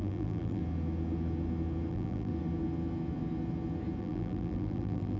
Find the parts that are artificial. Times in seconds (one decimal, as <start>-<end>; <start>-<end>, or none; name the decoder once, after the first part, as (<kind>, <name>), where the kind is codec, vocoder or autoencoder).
0.0-0.6 (vocoder, BigVGAN v2); 1.9-2.3; 4.0-5.2